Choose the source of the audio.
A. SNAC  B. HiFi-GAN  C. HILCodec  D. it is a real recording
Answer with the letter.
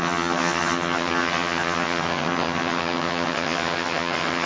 B